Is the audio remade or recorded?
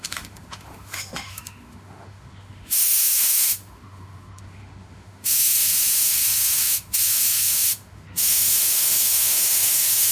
remade